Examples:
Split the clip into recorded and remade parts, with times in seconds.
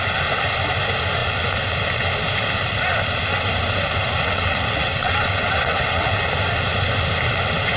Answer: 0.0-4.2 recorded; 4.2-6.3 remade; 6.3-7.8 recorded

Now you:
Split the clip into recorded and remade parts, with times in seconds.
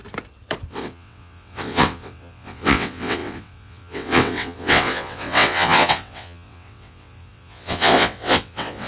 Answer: 0.0-0.7 recorded; 0.7-8.9 remade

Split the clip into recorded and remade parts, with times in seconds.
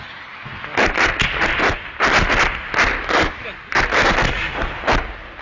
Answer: 0.0-5.4 recorded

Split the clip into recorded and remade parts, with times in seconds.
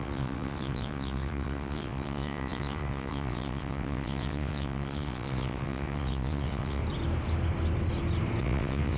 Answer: 0.0-6.8 remade; 6.8-8.4 recorded; 8.4-9.0 remade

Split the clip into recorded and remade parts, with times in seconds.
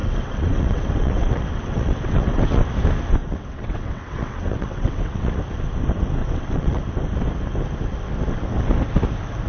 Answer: 0.0-2.6 remade; 2.6-3.2 recorded; 3.2-5.4 remade; 5.4-6.2 recorded; 6.2-6.8 remade; 6.8-9.5 recorded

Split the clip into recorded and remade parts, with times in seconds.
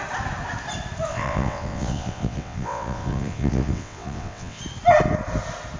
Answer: 0.0-1.1 recorded; 1.1-4.6 remade; 4.6-5.8 recorded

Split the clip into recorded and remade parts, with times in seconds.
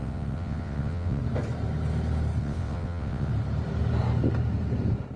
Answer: 0.0-1.2 remade; 1.2-2.4 recorded; 2.4-3.3 remade; 3.3-5.2 recorded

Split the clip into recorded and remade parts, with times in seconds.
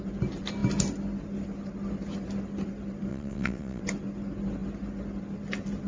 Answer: 0.0-3.1 recorded; 3.1-3.8 remade; 3.8-5.9 recorded